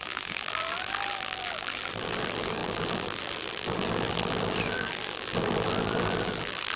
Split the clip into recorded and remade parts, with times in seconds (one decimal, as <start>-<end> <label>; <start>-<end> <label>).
0.0-6.8 remade